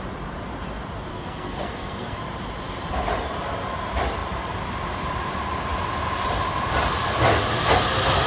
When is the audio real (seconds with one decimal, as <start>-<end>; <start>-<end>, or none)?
0.0-1.1; 2.2-8.3